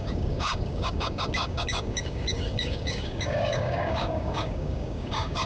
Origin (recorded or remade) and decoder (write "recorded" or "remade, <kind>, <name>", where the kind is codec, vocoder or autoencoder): remade, codec, DAC